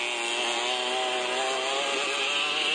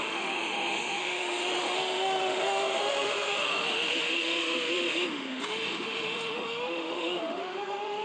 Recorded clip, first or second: first